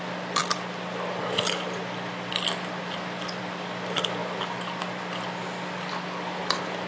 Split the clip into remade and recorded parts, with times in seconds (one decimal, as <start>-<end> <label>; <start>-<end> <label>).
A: 0.0-6.9 recorded